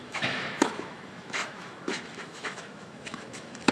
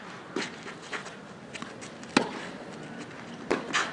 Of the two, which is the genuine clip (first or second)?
second